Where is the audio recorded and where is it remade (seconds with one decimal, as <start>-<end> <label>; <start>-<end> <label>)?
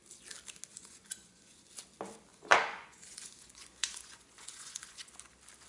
0.0-0.7 recorded; 0.7-1.7 remade; 1.7-2.3 recorded; 2.3-5.1 remade; 5.1-5.7 recorded